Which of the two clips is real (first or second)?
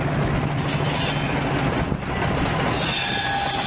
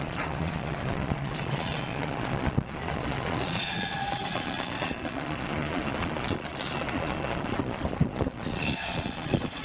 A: first